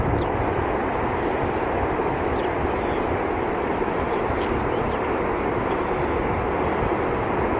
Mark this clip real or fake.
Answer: real